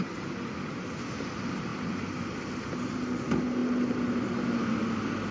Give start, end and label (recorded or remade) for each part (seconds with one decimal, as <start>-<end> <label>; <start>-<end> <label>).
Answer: 0.0-1.7 recorded; 1.7-2.4 remade; 2.4-5.3 recorded